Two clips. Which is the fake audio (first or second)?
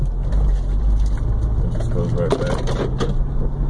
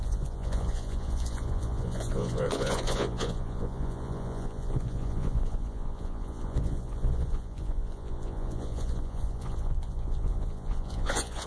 second